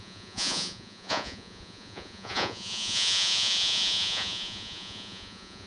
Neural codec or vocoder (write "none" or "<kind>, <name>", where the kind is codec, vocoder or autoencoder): vocoder, Vocos